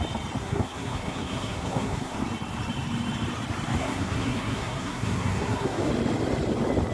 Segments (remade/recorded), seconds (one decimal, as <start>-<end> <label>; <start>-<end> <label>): 0.0-0.4 recorded; 0.4-2.2 remade; 2.2-3.8 recorded; 3.8-5.9 remade; 5.9-6.9 recorded